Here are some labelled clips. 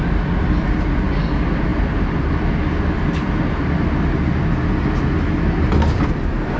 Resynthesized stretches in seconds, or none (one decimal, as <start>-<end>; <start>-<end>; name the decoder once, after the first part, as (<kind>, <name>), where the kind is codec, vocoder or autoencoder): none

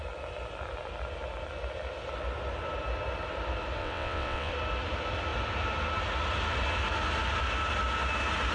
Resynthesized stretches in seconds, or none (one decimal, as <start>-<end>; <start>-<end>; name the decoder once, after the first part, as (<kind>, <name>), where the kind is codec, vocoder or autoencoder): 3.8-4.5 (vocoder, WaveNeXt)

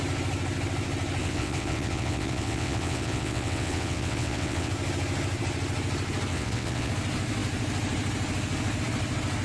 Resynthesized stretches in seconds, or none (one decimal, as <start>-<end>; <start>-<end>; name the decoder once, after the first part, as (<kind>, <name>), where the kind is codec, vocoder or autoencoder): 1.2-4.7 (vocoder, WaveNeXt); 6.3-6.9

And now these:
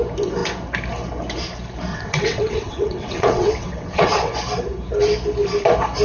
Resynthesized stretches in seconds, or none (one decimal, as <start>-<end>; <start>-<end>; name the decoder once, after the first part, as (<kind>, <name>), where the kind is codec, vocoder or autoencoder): 1.9-4.3 (vocoder, WaveNeXt)

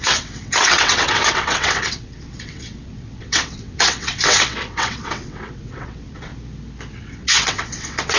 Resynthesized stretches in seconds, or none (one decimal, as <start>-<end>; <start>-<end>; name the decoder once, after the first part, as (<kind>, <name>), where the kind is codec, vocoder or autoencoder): 0.0-6.3 (vocoder, WaveNeXt); 6.9-8.2